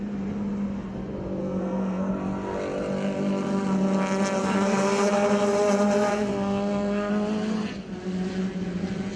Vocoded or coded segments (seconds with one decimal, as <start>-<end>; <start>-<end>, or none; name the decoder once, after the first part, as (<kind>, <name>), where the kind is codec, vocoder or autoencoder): 1.4-2.1 (codec, SNAC); 4.4-5.1; 6.1-7.1